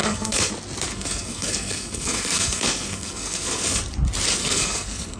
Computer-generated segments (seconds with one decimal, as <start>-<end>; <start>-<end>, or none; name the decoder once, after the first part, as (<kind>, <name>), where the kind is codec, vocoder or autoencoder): 0.0-0.5 (codec, SNAC); 0.9-3.8; 4.4-5.2